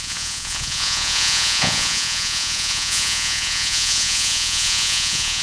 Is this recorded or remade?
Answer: remade